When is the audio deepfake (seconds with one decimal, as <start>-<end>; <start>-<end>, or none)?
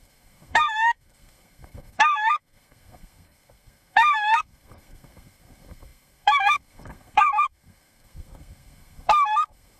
0.0-9.8